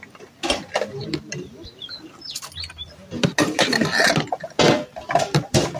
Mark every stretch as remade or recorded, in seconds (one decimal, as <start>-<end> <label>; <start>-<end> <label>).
0.0-5.8 recorded